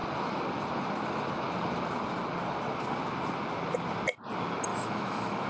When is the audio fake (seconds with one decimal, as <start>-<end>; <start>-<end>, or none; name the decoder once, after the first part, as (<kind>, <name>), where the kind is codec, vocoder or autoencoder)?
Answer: 4.7-5.5 (autoencoder, DAC-VAE)